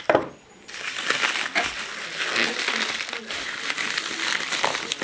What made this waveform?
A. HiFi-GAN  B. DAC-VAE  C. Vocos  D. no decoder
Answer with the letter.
D